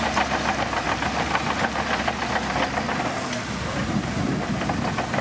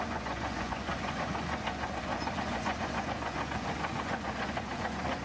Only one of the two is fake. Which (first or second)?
second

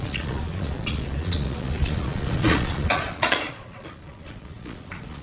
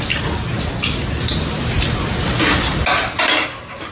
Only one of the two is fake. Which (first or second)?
first